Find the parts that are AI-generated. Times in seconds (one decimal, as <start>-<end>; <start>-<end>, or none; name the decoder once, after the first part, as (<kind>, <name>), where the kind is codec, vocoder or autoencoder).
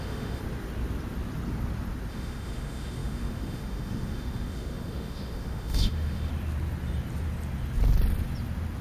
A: 0.0-0.4 (autoencoder, DAC-VAE); 2.1-6.3